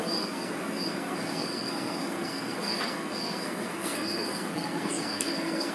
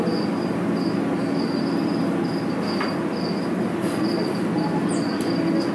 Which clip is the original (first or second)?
second